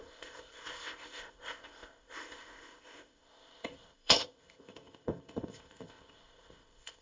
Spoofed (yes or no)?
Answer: yes